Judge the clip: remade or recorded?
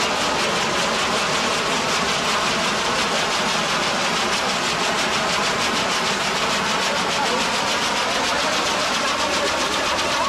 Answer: recorded